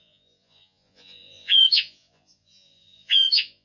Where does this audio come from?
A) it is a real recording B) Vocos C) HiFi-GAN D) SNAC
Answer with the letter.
B